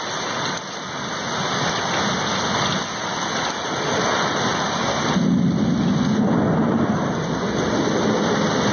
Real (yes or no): yes